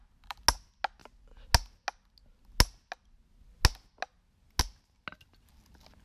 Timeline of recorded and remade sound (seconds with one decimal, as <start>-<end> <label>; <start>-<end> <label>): 0.0-6.0 recorded